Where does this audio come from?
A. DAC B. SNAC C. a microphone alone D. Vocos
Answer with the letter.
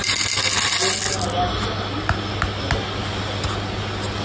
C